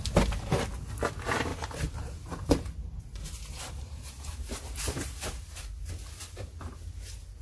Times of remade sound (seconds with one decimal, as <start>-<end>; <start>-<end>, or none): 1.5-5.9